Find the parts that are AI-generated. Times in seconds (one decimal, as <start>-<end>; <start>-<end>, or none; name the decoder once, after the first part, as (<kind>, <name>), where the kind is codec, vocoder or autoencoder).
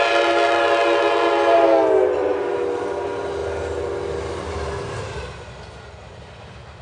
none